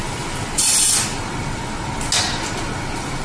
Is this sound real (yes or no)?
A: yes